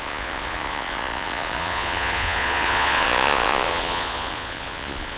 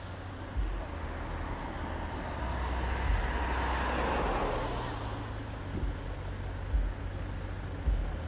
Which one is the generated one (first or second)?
first